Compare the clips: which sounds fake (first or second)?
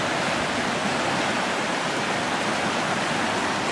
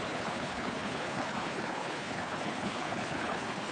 second